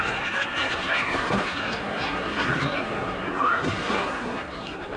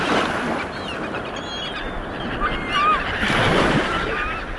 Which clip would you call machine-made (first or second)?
first